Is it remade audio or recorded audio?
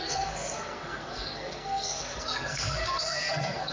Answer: remade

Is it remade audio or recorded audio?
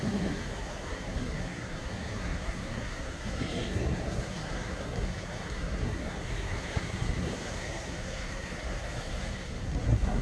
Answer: remade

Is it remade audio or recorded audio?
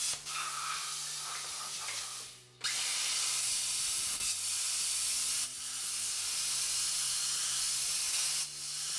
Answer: recorded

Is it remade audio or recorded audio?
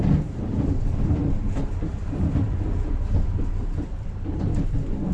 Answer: recorded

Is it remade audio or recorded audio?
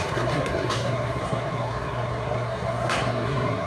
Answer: remade